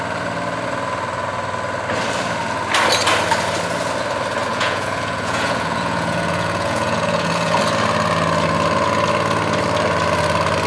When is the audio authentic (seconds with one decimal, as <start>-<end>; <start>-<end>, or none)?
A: 0.0-4.5; 7.6-10.7